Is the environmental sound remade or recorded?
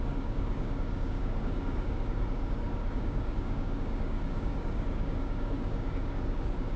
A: remade